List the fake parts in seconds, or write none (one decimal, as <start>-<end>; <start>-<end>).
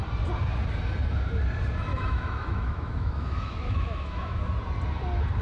1.9-4.4